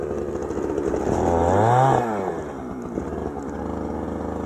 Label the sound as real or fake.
real